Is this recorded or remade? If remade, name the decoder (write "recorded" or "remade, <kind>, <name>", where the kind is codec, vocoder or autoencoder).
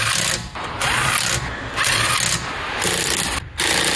recorded